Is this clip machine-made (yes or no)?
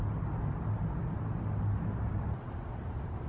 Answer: no